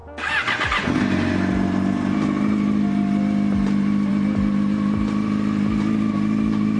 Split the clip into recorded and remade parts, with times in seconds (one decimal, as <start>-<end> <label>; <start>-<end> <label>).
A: 0.0-6.8 recorded